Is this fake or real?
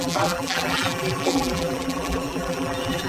fake